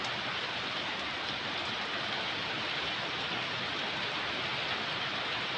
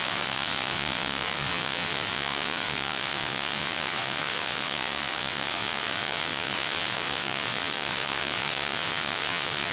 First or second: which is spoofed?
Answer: second